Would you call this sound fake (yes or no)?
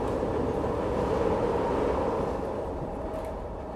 no